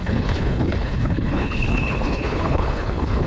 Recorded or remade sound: remade